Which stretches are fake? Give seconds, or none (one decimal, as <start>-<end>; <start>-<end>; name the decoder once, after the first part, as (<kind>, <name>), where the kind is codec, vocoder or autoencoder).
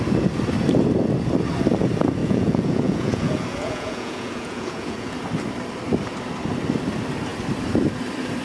2.2-5.2 (vocoder, Vocos)